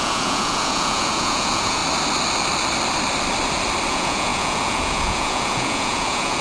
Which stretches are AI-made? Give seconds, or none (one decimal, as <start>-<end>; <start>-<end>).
0.0-1.8; 3.9-6.4